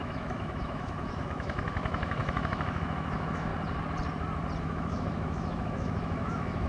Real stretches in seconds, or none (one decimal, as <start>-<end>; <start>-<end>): 3.5-4.6